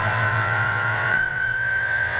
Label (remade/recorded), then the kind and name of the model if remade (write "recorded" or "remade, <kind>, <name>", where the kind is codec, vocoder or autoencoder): remade, vocoder, WaveNeXt